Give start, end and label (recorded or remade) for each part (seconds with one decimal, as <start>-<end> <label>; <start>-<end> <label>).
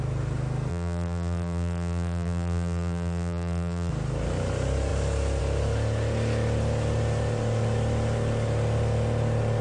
0.0-0.7 recorded; 0.7-3.9 remade; 3.9-9.6 recorded